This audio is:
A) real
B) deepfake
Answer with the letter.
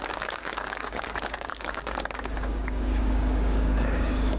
B